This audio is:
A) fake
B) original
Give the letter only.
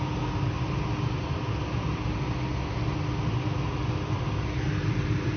B